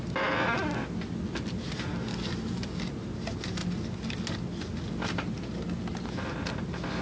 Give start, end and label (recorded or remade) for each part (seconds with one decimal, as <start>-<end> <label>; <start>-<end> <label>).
0.0-2.1 recorded; 2.1-2.8 remade; 2.8-7.0 recorded